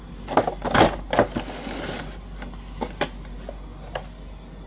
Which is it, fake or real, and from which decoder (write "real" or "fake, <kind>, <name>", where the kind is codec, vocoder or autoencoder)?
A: real